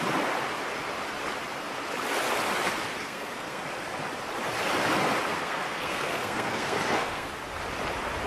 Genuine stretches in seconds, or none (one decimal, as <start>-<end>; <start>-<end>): 0.0-3.0; 3.6-5.3; 7.3-8.3